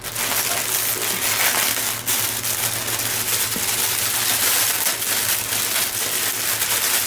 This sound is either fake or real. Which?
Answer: real